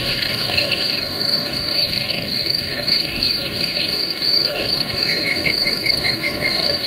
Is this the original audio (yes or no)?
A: no